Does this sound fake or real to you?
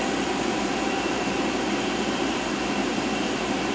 fake